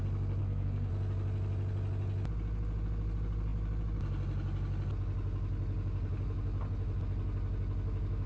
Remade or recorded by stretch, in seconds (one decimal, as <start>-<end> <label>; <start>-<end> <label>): 0.0-0.4 recorded; 0.4-0.9 remade; 0.9-8.3 recorded